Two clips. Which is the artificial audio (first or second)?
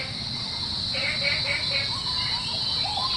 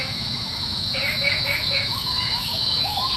second